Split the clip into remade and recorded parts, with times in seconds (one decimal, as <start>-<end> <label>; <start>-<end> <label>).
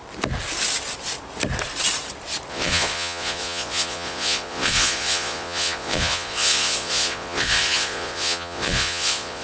0.0-2.5 recorded; 2.5-9.4 remade